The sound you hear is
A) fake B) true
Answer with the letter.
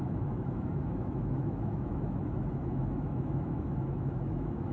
A